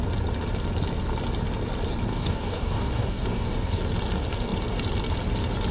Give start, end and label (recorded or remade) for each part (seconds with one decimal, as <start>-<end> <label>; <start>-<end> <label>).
0.0-2.1 recorded; 2.1-3.8 remade; 3.8-5.7 recorded